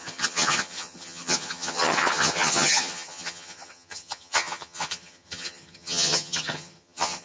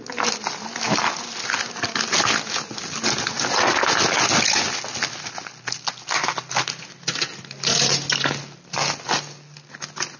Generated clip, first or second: first